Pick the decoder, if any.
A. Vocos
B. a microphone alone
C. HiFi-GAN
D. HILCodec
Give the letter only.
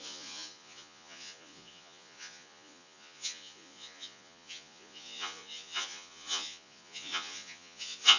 A